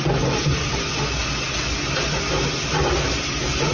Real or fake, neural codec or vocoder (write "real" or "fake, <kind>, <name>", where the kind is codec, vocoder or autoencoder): real